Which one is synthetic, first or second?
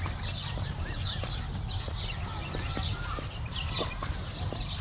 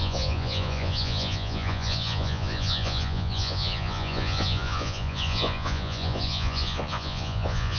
second